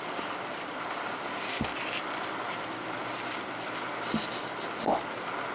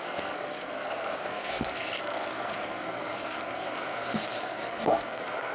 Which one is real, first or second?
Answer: first